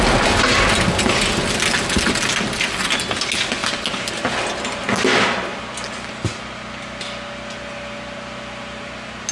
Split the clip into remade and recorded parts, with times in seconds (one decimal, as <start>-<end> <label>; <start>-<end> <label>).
0.0-9.3 recorded